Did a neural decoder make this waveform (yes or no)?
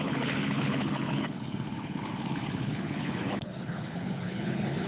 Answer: yes